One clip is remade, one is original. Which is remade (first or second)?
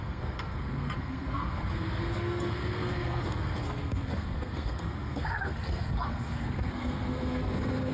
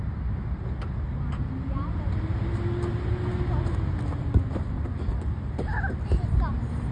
first